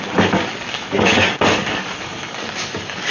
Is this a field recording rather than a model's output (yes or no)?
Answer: no